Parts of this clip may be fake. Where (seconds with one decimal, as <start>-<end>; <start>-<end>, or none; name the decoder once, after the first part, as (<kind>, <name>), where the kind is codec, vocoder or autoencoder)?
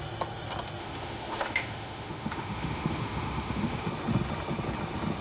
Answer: 0.8-3.9 (autoencoder, DAC-VAE)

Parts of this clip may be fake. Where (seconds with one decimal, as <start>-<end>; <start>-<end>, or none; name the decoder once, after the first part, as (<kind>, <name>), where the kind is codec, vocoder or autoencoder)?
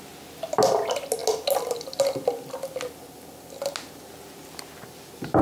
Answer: none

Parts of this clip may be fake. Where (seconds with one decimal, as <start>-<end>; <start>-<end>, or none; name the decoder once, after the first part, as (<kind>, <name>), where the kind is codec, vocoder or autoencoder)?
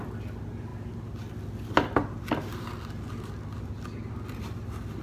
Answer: none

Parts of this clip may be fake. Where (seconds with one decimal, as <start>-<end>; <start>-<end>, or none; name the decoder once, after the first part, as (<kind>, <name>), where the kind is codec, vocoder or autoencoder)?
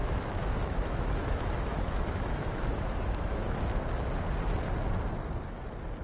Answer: 0.0-3.6 (autoencoder, DAC-VAE)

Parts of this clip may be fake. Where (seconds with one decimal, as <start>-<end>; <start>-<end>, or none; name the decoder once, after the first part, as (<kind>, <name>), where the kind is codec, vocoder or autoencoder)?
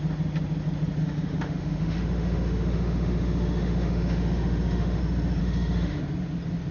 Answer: 1.0-5.0 (autoencoder, DAC-VAE); 5.4-6.0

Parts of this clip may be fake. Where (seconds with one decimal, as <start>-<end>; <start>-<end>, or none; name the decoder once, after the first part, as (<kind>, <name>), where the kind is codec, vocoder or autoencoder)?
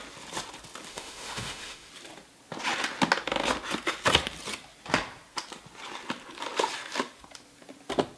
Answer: 0.9-1.9 (autoencoder, DAC-VAE)